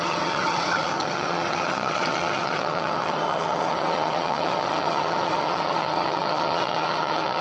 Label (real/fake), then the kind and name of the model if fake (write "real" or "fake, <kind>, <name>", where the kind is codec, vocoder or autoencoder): fake, vocoder, WaveNeXt